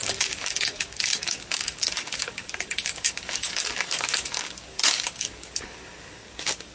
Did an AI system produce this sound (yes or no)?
yes